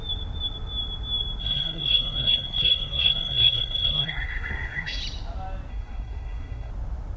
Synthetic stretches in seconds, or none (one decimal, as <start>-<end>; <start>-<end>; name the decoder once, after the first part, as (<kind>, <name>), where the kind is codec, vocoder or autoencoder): 1.4-5.0 (codec, SNAC); 5.7-6.7